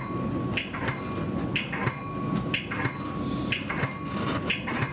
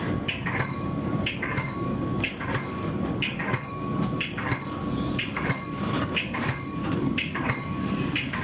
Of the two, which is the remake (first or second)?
second